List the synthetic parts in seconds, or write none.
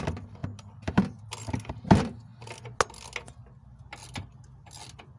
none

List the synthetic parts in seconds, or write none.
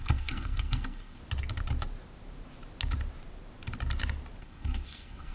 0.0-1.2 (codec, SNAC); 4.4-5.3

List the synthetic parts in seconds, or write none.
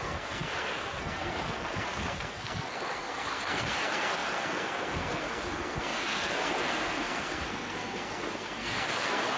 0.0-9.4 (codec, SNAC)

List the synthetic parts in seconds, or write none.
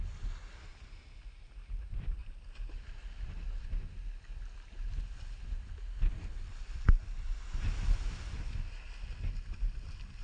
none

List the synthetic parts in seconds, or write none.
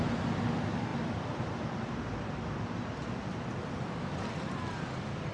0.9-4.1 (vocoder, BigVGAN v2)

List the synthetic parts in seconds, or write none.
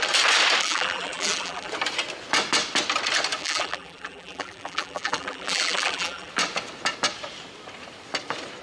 0.6-1.7 (vocoder, BigVGAN v2); 3.4-6.3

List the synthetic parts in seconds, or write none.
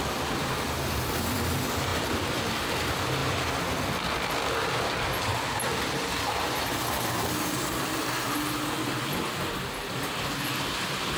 none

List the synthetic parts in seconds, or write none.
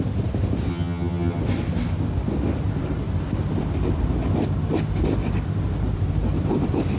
0.7-1.4 (vocoder, HiFi-GAN)